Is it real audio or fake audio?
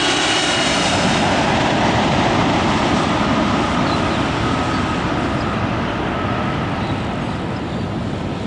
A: real